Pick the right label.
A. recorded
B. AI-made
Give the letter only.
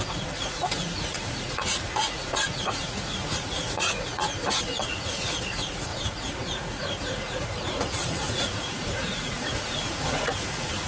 B